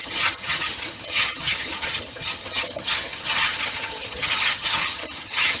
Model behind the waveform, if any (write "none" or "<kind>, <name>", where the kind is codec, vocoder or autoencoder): vocoder, HiFi-GAN